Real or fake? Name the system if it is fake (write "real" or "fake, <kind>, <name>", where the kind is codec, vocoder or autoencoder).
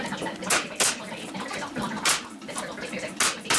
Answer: real